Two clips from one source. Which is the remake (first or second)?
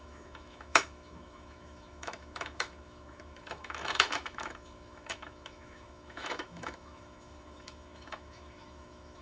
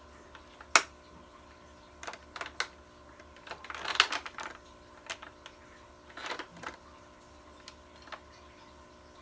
first